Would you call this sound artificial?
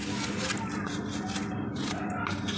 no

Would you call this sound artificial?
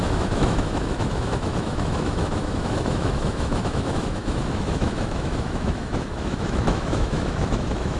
yes